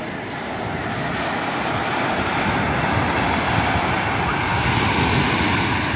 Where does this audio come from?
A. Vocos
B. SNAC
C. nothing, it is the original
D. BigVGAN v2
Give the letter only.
C